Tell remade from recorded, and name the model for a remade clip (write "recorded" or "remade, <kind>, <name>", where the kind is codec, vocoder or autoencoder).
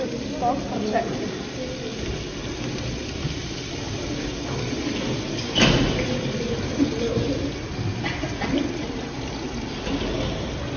recorded